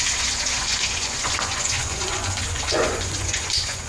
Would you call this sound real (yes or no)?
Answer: no